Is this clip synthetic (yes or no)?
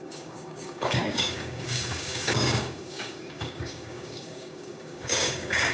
yes